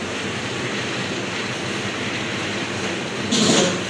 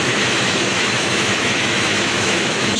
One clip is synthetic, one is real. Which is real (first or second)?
first